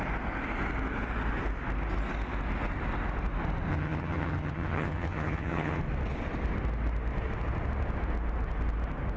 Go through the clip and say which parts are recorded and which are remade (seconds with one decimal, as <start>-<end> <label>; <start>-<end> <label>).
0.0-3.7 recorded; 3.7-5.8 remade; 5.8-9.2 recorded